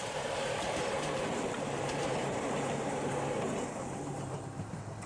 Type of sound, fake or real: fake